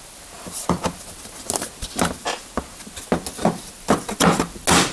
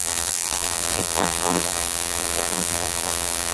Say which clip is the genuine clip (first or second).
first